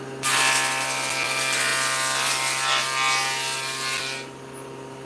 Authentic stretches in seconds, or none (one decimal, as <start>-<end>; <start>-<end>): 0.0-5.1